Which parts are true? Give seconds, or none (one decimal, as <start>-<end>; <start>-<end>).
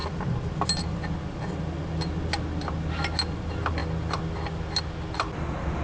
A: 0.0-5.8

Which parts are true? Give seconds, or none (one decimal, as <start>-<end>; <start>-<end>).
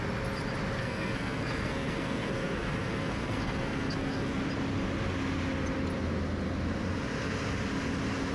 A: 0.0-0.8; 4.4-8.3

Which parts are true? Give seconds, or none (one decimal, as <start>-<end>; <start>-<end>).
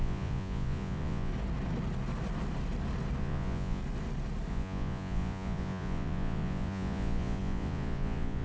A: 1.3-3.2; 3.8-4.5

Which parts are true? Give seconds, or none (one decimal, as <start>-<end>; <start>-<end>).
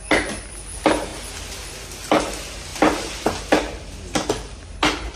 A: 0.0-5.2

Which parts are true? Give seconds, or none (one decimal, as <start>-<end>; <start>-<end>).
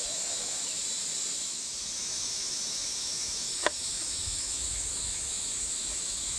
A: 0.8-1.3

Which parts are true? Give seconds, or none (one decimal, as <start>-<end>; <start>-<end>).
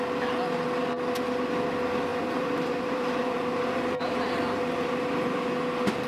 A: 0.0-2.1; 5.5-6.1